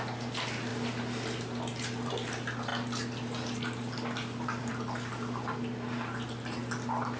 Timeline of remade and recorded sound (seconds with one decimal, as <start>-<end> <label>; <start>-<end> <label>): 0.0-7.2 recorded